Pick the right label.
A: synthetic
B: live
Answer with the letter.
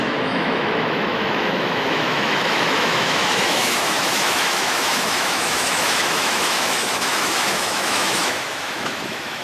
A